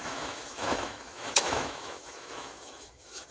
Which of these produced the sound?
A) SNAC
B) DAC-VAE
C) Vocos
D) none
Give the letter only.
B